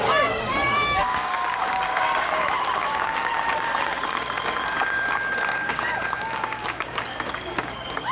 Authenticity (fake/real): fake